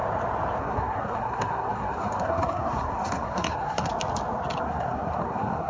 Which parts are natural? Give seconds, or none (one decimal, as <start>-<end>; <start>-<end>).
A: 0.0-0.6; 3.9-4.6